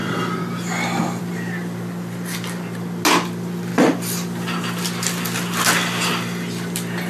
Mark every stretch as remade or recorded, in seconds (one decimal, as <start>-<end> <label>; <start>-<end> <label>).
0.0-7.1 recorded